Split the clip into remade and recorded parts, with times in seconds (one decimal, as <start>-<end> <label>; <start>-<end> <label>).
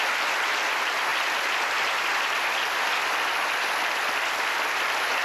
0.0-5.2 recorded